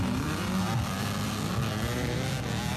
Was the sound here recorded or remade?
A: recorded